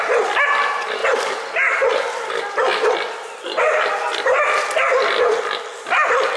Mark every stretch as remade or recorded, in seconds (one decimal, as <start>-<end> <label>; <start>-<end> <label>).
0.0-1.0 recorded; 1.0-2.5 remade; 2.5-6.4 recorded